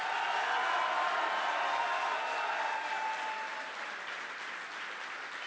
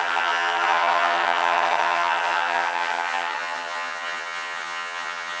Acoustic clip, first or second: first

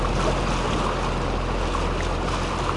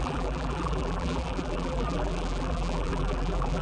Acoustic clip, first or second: first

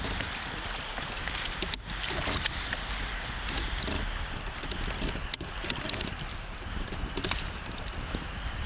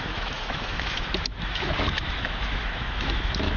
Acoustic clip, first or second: first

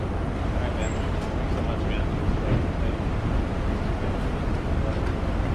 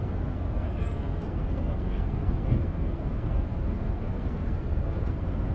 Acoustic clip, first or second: first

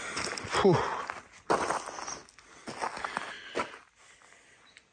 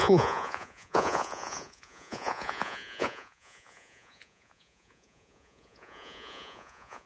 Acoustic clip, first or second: first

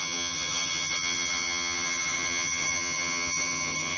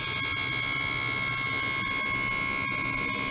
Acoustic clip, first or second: second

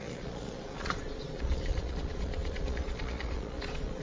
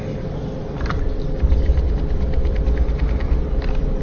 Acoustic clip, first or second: second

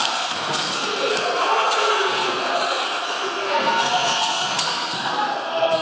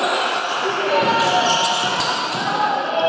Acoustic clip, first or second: second